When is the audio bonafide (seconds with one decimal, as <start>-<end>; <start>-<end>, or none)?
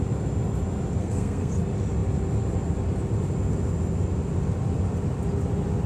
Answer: 0.0-1.0; 1.5-5.9